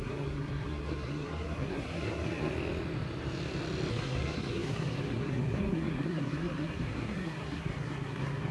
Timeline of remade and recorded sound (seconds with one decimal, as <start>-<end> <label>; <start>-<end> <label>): 0.0-2.5 remade; 2.5-3.9 recorded; 3.9-8.5 remade